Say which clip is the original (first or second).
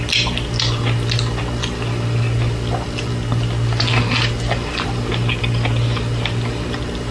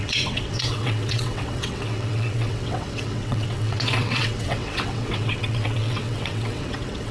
first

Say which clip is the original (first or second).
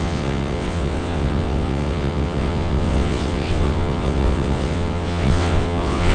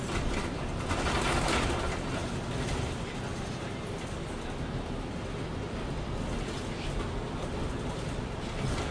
second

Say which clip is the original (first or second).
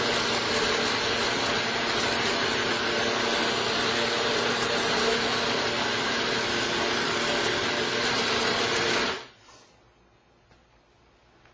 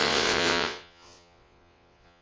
first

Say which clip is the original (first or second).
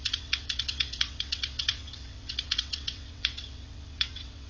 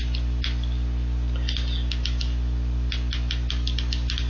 second